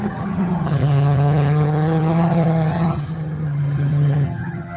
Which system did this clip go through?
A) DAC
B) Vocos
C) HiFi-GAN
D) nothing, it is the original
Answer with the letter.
C